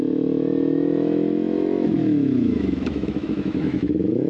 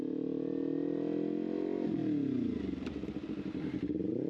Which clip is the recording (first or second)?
second